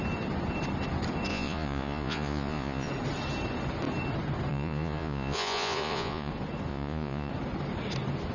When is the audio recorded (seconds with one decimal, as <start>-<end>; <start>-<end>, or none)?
0.0-1.3; 2.9-4.5; 6.3-6.7; 7.3-8.3